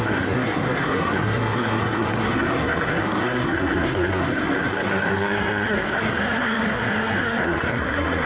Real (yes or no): no